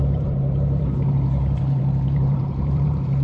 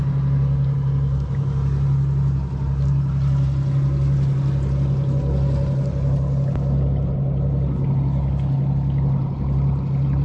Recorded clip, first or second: second